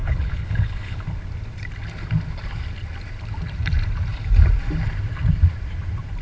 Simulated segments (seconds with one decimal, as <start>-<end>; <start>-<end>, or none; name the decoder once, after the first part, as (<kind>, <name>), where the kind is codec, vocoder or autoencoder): 0.0-1.0 (codec, HILCodec)